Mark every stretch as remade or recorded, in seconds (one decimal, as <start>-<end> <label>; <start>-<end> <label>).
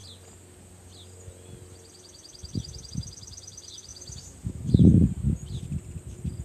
0.0-2.9 recorded; 2.9-3.9 remade; 3.9-4.5 recorded; 4.5-6.4 remade